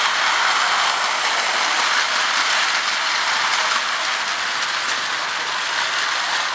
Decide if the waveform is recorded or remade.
recorded